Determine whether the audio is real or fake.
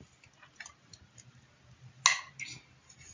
real